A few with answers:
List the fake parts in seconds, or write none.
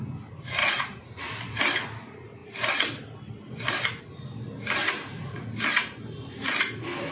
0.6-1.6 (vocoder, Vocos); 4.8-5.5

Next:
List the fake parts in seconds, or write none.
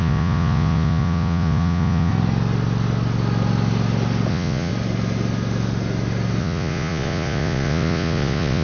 0.0-2.1 (vocoder, Vocos); 4.3-4.7; 6.4-8.6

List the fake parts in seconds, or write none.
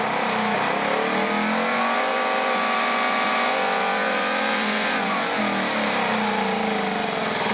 1.7-5.4 (vocoder, Vocos)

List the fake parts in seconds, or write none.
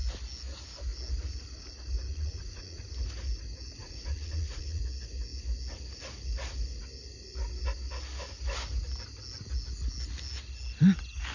2.1-2.8 (vocoder, Vocos); 3.8-4.8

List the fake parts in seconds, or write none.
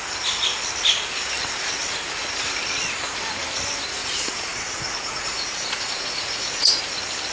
4.0-6.8 (vocoder, Vocos)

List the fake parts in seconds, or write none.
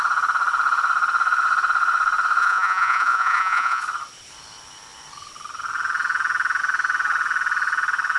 2.4-3.8 (vocoder, Vocos)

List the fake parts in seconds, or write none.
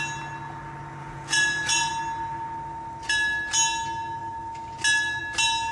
1.0-1.9 (vocoder, Vocos)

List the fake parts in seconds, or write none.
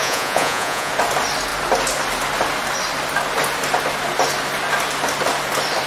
0.0-0.9 (vocoder, Vocos)